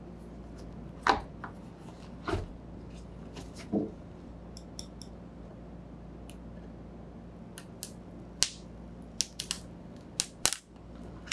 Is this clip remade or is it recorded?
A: recorded